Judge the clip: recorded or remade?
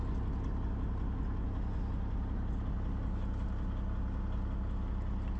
recorded